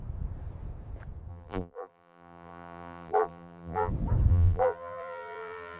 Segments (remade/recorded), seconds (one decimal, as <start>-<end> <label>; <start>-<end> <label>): 0.0-1.3 recorded; 1.3-3.9 remade; 3.9-4.3 recorded; 4.3-5.8 remade